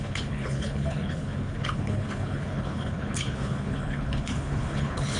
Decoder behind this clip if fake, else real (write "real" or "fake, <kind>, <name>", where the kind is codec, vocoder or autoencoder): fake, codec, HILCodec